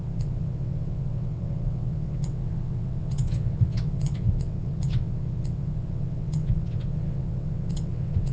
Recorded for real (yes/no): no